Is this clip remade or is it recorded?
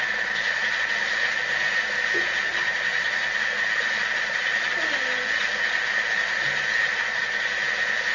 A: recorded